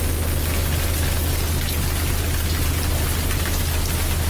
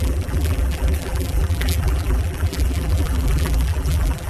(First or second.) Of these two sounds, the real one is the first